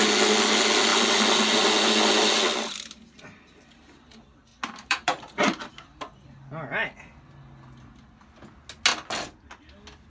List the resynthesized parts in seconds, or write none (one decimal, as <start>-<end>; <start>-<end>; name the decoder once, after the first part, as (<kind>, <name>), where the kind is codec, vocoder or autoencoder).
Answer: 4.5-5.7 (vocoder, BigVGAN v2)